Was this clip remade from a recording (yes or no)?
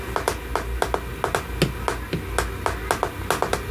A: no